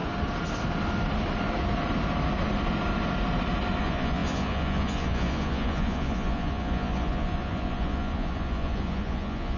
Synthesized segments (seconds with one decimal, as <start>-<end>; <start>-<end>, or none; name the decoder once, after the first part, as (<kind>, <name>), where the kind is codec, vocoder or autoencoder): 3.8-9.6 (vocoder, Vocos)